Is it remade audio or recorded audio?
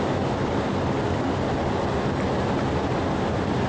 recorded